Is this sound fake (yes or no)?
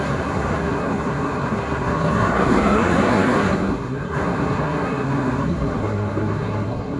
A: yes